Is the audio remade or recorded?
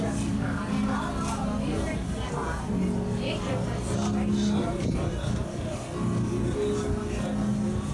recorded